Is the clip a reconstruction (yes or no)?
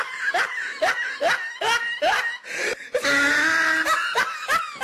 no